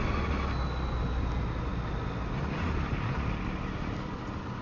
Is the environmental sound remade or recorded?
recorded